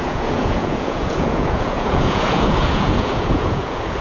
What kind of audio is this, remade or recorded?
remade